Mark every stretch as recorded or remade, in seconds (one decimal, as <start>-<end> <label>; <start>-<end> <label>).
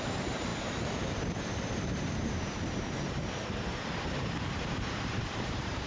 0.0-5.9 remade